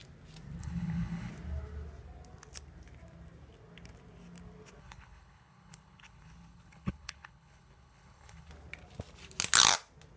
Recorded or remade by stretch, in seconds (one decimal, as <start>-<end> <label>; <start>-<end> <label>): 0.0-0.6 recorded; 0.6-1.3 remade; 1.3-4.8 recorded; 4.8-8.5 remade; 8.5-10.2 recorded